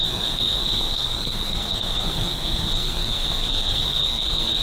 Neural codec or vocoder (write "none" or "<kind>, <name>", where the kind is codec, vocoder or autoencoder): codec, SNAC